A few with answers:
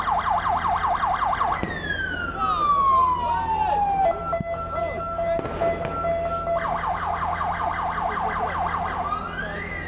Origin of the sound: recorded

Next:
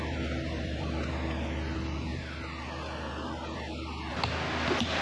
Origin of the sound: recorded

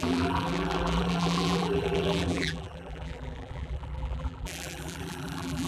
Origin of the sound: remade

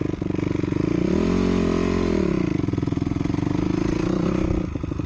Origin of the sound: recorded